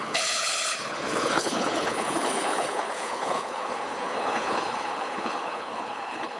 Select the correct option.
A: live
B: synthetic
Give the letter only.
B